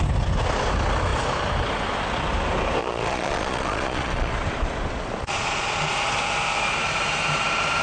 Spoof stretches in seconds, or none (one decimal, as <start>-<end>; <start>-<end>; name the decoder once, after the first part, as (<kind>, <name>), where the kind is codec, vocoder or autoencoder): 2.8-4.3 (vocoder, Vocos); 5.2-5.9